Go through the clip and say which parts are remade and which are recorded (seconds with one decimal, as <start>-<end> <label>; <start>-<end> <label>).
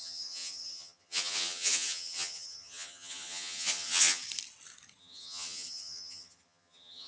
0.0-4.2 remade; 4.2-5.0 recorded; 5.0-7.1 remade